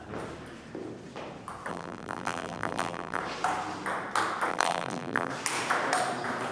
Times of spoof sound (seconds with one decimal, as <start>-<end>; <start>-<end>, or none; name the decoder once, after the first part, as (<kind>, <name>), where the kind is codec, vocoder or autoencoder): 1.7-3.2 (vocoder, BigVGAN v2); 4.5-5.3